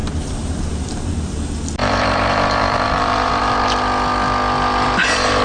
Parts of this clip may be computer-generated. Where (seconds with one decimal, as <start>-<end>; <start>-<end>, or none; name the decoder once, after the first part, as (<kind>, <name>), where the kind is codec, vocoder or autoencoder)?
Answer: 0.0-1.4 (vocoder, BigVGAN v2); 1.8-3.3